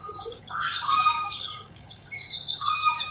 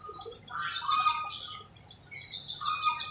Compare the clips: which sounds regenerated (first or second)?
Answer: first